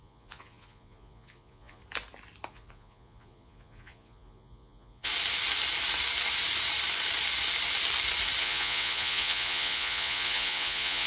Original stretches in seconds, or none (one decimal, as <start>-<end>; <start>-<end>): 1.8-2.5; 5.1-8.4